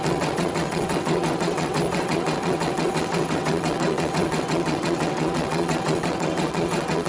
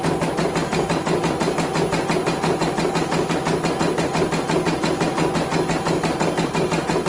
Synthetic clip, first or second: first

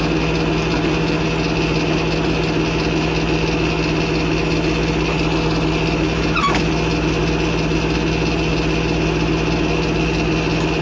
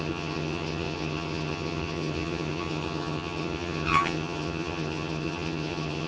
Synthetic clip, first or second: second